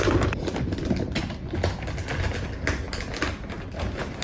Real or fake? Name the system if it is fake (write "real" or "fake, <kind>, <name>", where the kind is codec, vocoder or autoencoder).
real